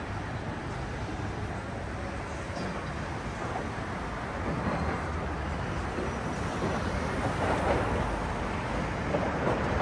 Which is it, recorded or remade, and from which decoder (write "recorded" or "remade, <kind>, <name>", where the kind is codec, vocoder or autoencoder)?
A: recorded